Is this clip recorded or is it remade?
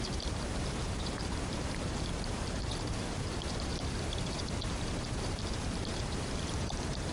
remade